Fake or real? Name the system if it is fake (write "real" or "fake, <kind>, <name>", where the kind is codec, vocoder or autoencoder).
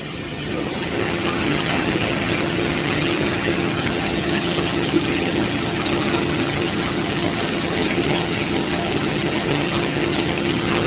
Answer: fake, vocoder, HiFi-GAN